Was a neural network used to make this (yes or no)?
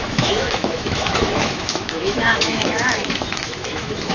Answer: yes